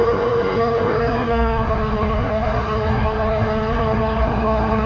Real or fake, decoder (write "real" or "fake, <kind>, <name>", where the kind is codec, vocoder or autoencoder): fake, codec, SNAC